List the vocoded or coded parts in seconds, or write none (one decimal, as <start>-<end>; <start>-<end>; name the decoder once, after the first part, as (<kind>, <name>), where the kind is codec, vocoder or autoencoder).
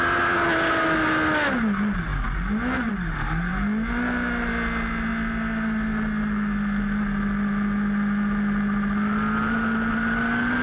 none